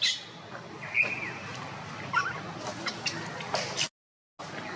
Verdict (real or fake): real